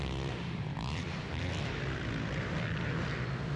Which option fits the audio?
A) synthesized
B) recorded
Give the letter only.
A